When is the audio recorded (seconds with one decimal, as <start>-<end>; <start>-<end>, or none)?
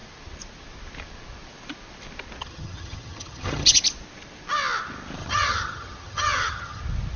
0.0-2.4; 3.8-5.2; 6.8-7.2